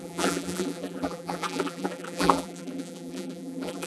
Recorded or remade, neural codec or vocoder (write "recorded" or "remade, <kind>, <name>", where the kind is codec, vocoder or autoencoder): remade, vocoder, BigVGAN v2